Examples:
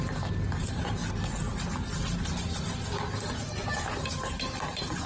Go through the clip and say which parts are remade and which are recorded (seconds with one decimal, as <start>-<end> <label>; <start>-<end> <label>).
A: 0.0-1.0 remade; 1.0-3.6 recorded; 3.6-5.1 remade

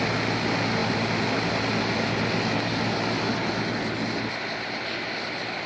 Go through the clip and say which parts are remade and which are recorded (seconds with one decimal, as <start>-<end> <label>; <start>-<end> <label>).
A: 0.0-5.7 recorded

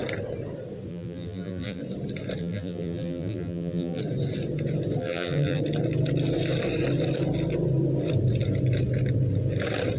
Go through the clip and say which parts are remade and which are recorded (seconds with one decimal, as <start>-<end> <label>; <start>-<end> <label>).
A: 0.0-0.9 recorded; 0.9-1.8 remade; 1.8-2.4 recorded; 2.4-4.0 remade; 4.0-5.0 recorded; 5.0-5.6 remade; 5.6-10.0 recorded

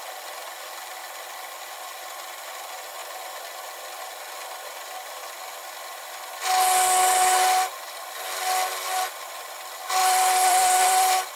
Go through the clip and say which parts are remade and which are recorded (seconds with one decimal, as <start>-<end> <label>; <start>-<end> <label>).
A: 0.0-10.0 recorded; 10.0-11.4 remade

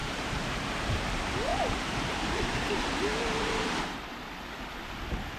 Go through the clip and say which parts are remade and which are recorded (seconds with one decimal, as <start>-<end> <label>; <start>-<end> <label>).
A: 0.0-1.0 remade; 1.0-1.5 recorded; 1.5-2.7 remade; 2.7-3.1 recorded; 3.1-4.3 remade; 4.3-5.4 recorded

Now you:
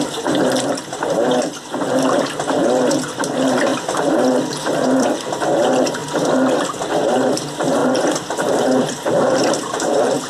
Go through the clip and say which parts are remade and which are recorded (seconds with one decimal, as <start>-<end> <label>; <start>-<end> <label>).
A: 0.0-3.7 remade; 3.7-4.4 recorded; 4.4-6.0 remade; 6.0-7.2 recorded; 7.2-10.3 remade